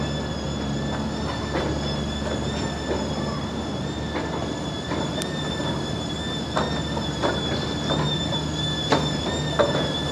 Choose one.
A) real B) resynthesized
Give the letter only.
A